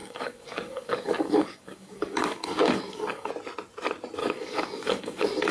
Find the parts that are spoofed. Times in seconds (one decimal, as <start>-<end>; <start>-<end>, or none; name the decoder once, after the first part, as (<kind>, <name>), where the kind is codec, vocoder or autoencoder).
0.0-3.3 (codec, DAC); 4.2-5.5